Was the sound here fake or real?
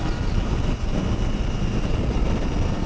real